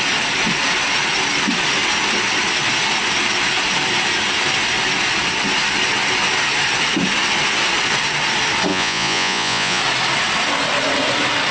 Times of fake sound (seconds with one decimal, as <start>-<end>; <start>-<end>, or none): 8.7-9.8